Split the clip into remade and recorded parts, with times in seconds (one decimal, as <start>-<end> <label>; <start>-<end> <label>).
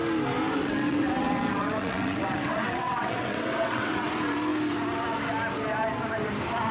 0.0-0.6 recorded; 0.6-4.1 remade; 4.1-6.7 recorded